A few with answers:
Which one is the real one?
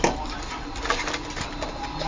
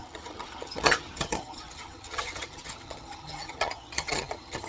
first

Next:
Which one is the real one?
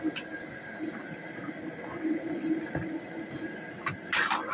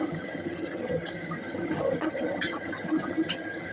first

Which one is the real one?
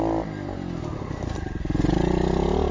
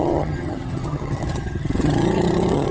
first